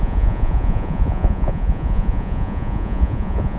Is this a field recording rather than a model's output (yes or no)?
no